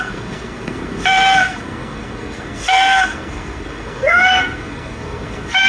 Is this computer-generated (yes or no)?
yes